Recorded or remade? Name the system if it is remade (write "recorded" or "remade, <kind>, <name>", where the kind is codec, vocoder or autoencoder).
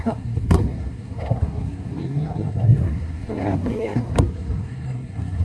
remade, codec, SNAC